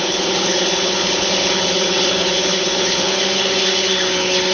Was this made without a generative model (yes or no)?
no